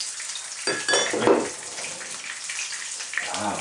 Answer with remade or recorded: recorded